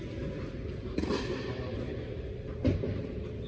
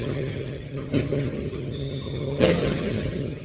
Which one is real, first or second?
first